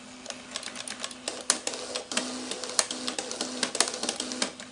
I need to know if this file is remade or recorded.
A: recorded